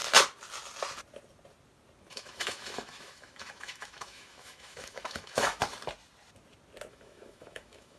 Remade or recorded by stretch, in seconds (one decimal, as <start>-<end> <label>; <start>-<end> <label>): 0.0-2.1 recorded; 2.1-5.6 remade; 5.6-6.9 recorded; 6.9-8.0 remade